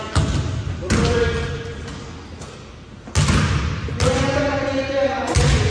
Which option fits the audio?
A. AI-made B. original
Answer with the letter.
B